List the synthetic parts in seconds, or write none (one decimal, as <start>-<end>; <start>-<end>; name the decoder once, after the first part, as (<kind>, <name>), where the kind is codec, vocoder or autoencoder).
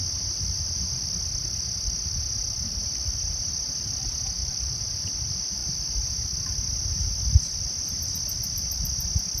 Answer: none